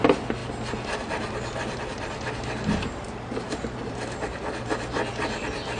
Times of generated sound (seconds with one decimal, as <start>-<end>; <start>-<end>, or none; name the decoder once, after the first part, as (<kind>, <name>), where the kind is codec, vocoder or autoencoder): none